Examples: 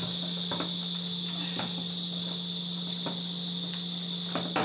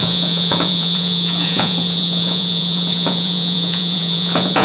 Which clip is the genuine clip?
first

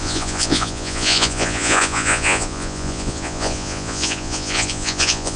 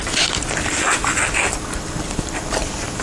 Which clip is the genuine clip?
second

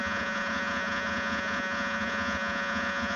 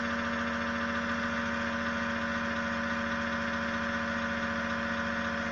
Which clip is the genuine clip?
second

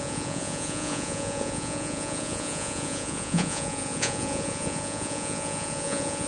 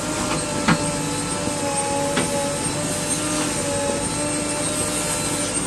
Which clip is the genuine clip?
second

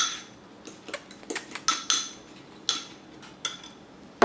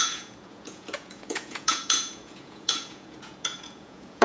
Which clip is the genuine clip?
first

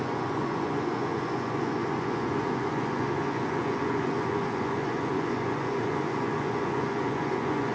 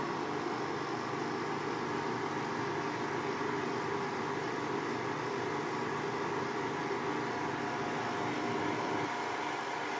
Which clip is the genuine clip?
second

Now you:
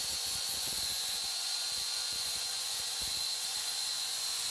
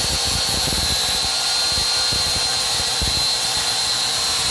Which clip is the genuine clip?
second